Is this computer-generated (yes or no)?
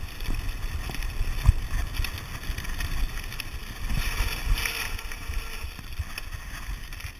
no